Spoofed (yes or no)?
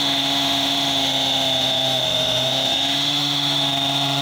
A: yes